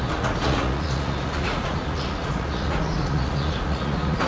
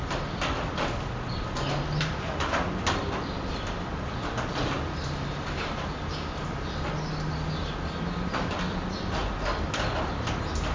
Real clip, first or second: second